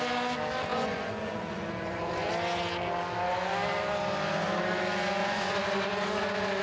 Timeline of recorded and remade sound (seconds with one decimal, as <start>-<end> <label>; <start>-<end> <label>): 0.0-0.7 recorded; 0.7-2.3 remade; 2.3-5.2 recorded; 5.2-5.7 remade; 5.7-6.6 recorded